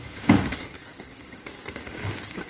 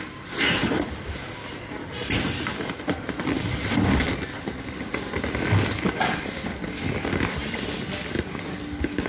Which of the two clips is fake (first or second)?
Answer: first